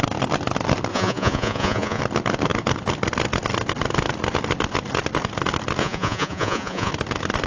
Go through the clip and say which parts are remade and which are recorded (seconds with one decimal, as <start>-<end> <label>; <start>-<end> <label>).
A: 0.0-0.9 recorded; 0.9-2.0 remade; 2.0-5.8 recorded; 5.8-6.9 remade; 6.9-7.5 recorded